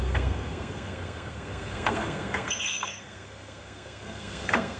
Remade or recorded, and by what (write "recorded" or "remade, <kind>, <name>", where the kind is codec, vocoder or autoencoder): remade, codec, SNAC